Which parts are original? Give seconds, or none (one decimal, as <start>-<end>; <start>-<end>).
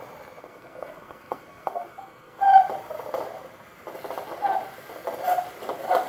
0.0-0.4; 2.4-6.1